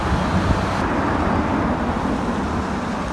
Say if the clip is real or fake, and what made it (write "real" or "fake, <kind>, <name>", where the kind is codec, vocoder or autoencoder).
real